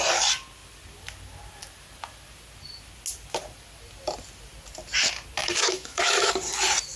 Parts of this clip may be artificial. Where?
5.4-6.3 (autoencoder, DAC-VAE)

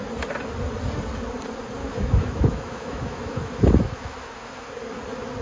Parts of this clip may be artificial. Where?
1.8-4.7 (autoencoder, DAC-VAE)